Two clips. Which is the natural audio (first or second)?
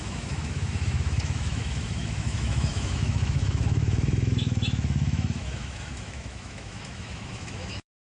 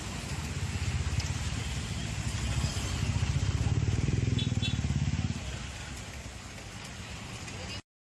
second